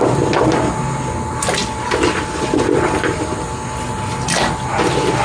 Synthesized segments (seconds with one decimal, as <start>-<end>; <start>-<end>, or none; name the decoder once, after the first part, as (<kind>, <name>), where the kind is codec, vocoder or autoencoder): none